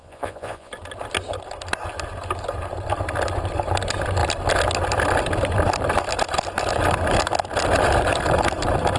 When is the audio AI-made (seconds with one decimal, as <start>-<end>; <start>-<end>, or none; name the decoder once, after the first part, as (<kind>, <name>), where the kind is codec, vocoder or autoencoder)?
0.0-0.7 (vocoder, Vocos)